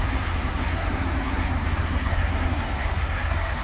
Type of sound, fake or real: fake